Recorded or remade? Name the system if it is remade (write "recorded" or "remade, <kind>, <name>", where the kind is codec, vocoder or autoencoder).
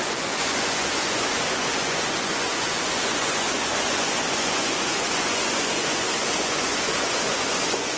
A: remade, vocoder, Vocos